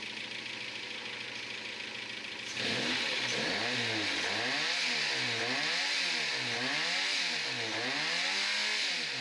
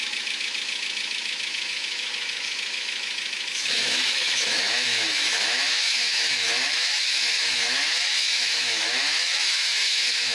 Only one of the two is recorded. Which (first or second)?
first